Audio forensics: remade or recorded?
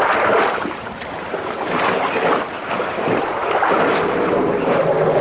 remade